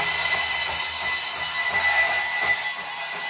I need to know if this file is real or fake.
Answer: real